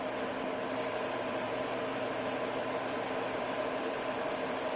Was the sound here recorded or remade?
remade